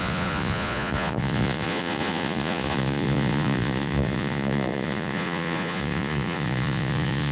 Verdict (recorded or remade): remade